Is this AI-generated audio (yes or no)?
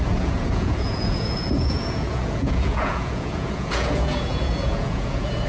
yes